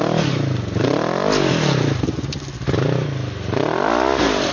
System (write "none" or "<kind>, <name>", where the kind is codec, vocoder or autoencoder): none